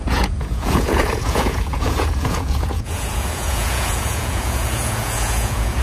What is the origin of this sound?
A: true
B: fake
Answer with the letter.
B